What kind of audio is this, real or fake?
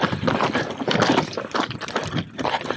real